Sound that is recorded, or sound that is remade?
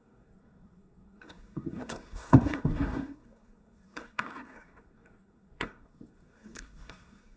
remade